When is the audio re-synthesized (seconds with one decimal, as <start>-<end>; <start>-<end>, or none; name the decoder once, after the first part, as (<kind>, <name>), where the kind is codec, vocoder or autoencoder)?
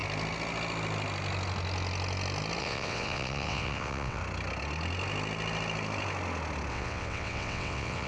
2.6-4.2 (vocoder, WaveNeXt); 6.7-8.1